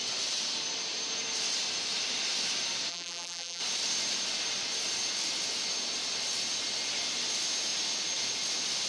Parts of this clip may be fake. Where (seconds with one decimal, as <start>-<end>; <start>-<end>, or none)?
2.9-3.6